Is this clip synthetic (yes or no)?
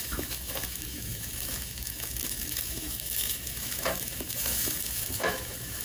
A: yes